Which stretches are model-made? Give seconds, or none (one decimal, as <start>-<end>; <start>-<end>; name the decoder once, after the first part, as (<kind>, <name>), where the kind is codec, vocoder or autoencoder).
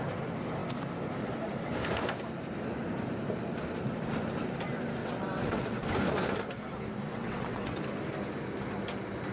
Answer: 5.0-5.8 (vocoder, WaveNeXt); 7.1-7.8